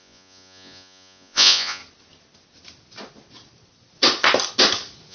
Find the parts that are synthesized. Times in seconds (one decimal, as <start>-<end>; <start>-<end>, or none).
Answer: 0.0-1.8